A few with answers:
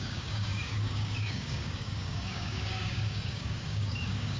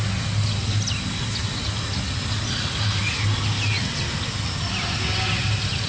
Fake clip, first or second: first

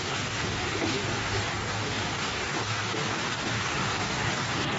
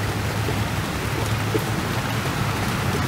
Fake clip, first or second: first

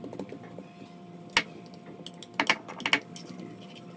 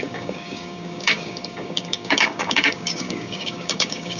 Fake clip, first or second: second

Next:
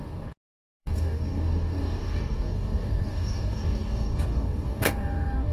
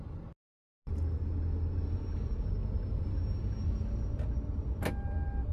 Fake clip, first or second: first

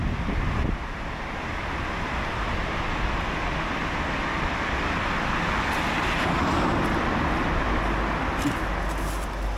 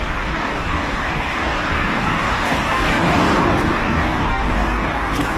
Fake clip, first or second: second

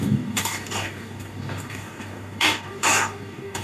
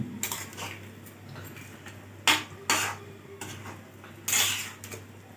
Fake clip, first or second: first